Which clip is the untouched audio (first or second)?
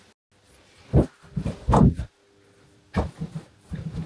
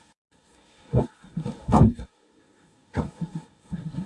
first